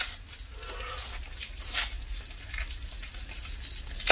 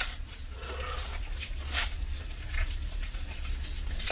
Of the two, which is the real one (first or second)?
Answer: first